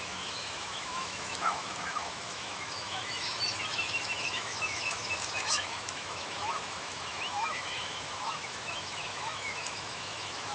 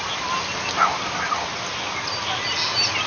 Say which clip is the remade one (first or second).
first